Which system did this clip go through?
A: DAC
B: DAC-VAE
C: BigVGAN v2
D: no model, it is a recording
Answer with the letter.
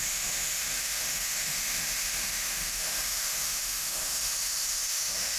B